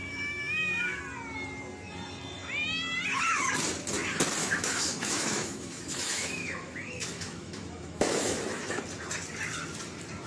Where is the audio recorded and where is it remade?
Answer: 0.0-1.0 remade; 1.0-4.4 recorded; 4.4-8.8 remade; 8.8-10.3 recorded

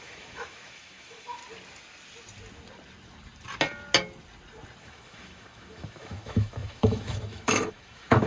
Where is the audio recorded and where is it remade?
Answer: 0.0-1.4 remade; 1.4-4.8 recorded; 4.8-8.3 remade

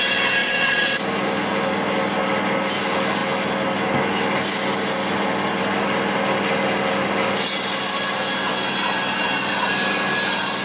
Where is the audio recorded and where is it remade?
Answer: 0.0-0.4 recorded; 0.4-1.0 remade; 1.0-10.6 recorded

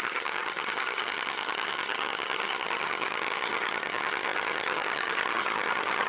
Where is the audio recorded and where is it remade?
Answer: 0.0-6.1 remade

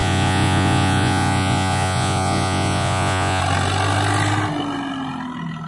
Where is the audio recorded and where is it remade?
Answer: 0.0-3.4 remade; 3.4-5.7 recorded

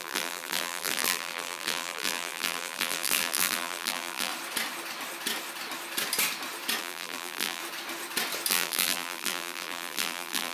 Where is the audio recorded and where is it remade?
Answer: 0.0-4.3 remade; 4.3-6.8 recorded; 6.8-7.6 remade; 7.6-8.5 recorded; 8.5-10.5 remade